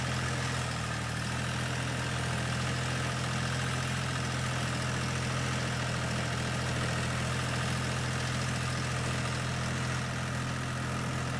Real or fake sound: real